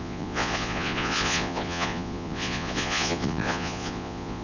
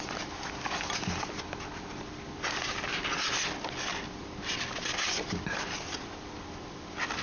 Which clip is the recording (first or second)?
second